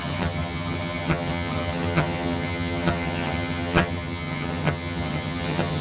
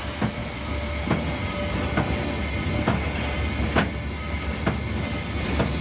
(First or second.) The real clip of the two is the second